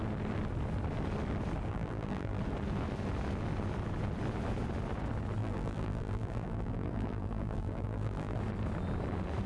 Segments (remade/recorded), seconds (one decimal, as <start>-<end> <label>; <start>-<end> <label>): 0.0-1.7 recorded; 1.7-2.4 remade; 2.4-5.4 recorded; 5.4-8.4 remade; 8.4-9.5 recorded